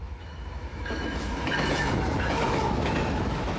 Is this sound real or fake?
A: fake